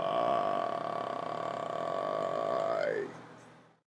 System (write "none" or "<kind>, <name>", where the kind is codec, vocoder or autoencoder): none